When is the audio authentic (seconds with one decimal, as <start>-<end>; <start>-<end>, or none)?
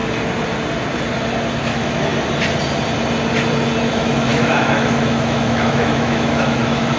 0.0-1.6; 2.1-3.9